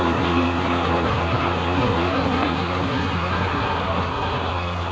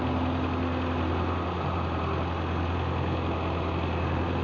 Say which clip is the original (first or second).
second